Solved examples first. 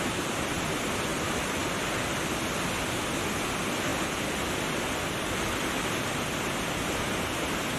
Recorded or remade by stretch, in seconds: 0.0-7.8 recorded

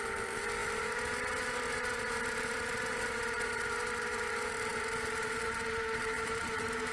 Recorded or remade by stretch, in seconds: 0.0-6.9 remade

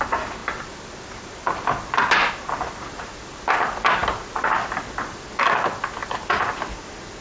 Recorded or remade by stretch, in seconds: 0.0-6.0 recorded; 6.0-6.7 remade; 6.7-7.2 recorded

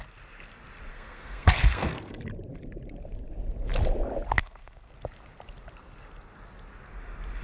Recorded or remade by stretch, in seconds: 0.0-0.9 recorded; 0.9-2.2 remade; 2.2-4.4 recorded; 4.4-4.9 remade; 4.9-7.4 recorded